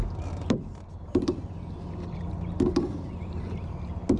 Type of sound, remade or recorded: recorded